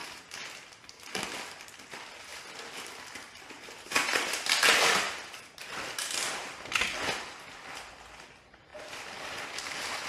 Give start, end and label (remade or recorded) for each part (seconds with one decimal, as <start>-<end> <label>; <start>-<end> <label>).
0.0-10.1 recorded

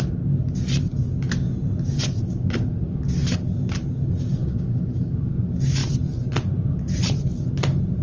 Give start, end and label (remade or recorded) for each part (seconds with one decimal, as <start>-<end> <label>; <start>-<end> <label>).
0.0-4.4 recorded; 4.4-5.2 remade; 5.2-8.0 recorded

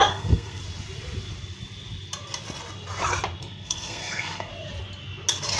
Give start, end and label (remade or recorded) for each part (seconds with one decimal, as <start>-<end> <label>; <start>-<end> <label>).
0.0-0.6 remade; 0.6-3.4 recorded; 3.4-4.5 remade; 4.5-5.6 recorded

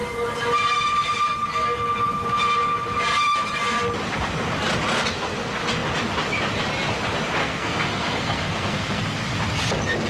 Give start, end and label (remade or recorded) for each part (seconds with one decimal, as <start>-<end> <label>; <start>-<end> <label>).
0.0-7.4 recorded; 7.4-9.0 remade; 9.0-10.1 recorded

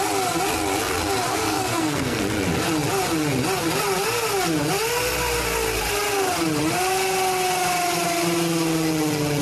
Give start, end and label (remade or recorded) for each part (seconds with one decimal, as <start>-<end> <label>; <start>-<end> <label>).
0.0-1.3 recorded; 1.3-2.2 remade; 2.2-9.4 recorded

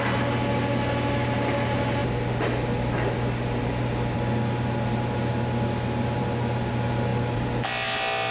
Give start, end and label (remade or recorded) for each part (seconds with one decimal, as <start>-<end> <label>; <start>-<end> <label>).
0.0-8.3 recorded